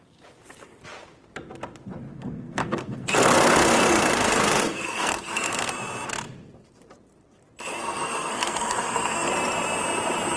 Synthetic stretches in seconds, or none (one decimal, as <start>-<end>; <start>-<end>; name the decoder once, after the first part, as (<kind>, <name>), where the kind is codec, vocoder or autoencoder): 2.1-5.7 (codec, SNAC); 7.8-9.3